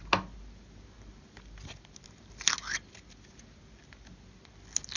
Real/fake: real